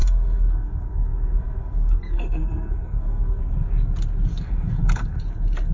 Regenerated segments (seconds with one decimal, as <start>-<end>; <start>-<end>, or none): 0.0-3.4; 4.3-5.2